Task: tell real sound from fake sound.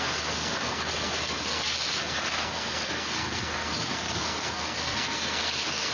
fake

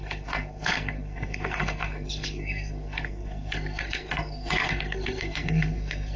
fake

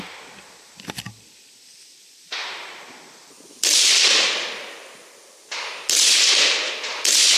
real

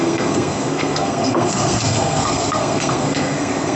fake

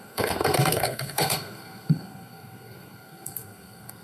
fake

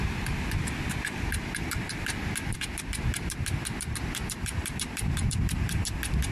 real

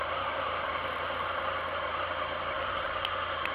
real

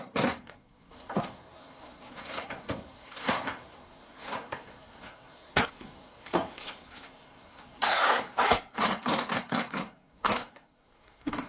fake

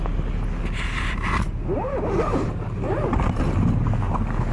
real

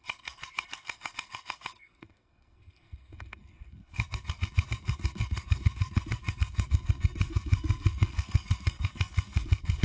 fake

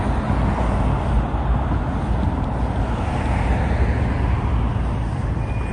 real